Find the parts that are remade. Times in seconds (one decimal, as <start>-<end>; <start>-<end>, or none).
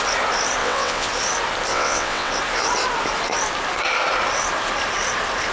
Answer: 0.6-1.1; 1.7-2.3